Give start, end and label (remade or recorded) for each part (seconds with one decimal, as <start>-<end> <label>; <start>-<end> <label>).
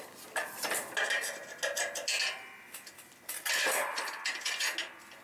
0.0-5.2 recorded